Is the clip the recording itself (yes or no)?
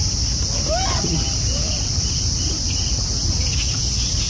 yes